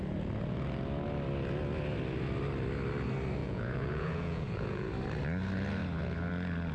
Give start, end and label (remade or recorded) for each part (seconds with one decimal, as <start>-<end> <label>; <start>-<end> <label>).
0.0-3.4 recorded; 3.4-4.9 remade; 4.9-6.7 recorded